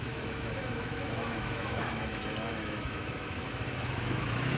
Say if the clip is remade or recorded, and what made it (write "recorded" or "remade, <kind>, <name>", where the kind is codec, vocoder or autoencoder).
remade, autoencoder, DAC-VAE